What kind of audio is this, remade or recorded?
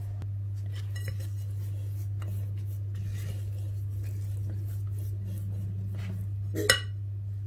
recorded